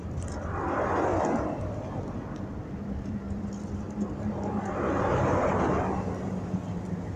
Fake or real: real